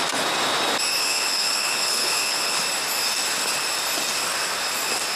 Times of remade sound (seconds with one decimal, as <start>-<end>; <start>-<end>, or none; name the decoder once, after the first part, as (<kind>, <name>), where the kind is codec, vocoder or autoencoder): 1.0-2.6 (codec, HILCodec)

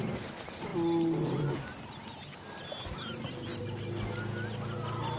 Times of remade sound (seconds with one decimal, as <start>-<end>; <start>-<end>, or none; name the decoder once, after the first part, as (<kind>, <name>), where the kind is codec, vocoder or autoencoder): none

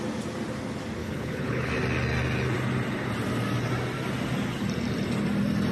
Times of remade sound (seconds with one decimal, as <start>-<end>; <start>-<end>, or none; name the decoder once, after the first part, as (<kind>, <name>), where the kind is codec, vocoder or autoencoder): 1.0-1.7 (codec, HILCodec)

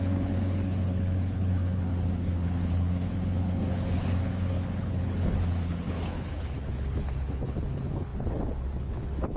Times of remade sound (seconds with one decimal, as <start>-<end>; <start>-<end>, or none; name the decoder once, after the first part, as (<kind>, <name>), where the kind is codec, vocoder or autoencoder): 0.0-9.4 (codec, HILCodec)

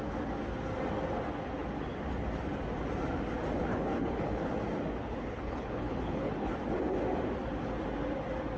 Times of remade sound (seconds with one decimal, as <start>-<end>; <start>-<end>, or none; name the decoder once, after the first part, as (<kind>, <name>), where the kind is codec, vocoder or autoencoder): 3.6-4.5 (codec, HILCodec); 5.0-6.5

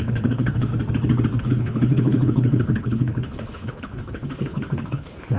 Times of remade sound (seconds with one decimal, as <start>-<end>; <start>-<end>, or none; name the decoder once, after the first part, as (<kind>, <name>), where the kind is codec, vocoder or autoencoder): 0.0-0.7 (codec, HILCodec); 1.4-5.4

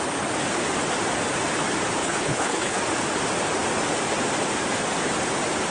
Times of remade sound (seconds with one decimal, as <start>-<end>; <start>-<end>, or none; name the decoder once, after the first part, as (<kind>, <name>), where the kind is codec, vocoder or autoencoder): 2.0-2.8 (codec, HILCodec)

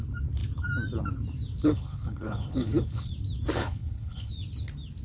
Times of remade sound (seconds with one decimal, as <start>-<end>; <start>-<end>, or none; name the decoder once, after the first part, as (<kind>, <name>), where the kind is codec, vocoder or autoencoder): 1.6-3.1 (codec, HILCodec); 3.6-4.3